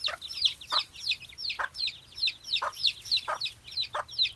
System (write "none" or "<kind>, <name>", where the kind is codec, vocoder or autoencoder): none